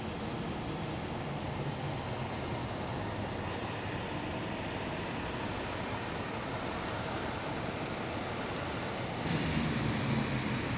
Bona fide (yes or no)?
yes